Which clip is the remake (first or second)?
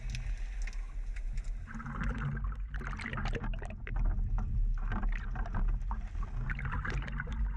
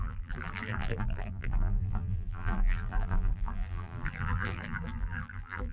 second